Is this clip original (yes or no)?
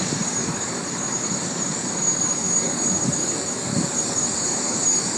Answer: no